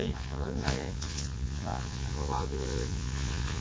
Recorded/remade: remade